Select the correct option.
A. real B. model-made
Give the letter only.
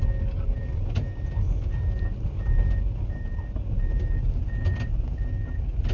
A